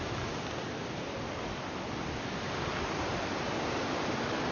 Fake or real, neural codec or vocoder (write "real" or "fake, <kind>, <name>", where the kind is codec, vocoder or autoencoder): real